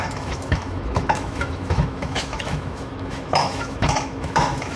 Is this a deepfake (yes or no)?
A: yes